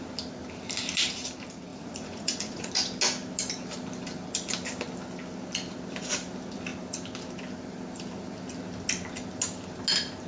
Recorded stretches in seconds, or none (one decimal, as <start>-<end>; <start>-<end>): 0.0-1.7; 2.7-10.3